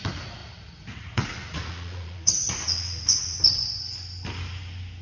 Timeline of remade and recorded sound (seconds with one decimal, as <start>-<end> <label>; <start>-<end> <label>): 0.0-0.4 recorded; 0.4-3.4 remade; 3.4-5.0 recorded